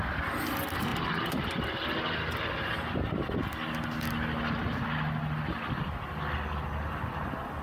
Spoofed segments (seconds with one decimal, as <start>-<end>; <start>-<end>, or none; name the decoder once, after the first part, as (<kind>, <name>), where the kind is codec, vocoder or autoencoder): none